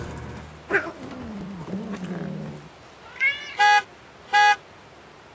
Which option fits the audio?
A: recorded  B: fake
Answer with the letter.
A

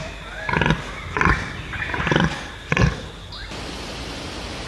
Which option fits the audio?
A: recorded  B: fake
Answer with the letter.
A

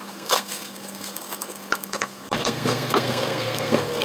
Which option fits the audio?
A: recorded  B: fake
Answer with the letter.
B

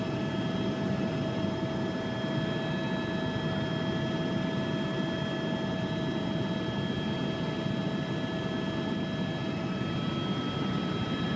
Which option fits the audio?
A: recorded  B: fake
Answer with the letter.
A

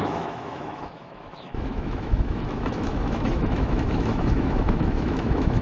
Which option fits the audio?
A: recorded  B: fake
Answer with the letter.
B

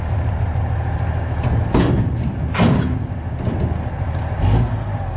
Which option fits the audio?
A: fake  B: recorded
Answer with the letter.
B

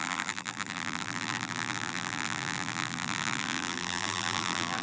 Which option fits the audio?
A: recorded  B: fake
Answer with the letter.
B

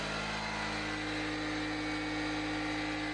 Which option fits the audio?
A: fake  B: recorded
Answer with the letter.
B